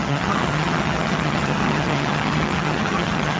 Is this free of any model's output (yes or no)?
no